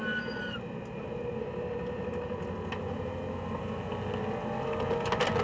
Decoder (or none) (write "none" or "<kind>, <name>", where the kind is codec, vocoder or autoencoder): none